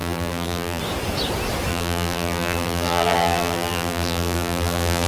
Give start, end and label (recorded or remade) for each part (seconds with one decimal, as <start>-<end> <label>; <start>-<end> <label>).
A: 0.0-0.8 remade; 0.8-1.7 recorded; 1.7-5.1 remade